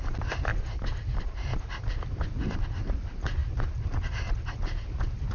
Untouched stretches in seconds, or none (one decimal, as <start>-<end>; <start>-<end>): 0.0-5.3